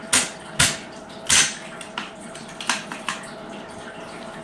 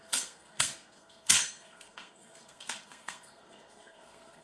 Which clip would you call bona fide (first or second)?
first